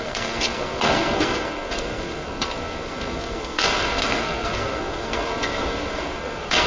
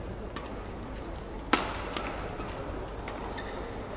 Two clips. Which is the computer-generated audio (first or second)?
first